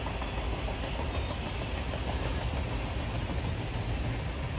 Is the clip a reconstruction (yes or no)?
no